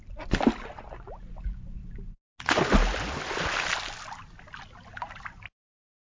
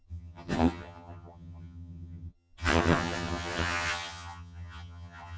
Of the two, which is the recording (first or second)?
first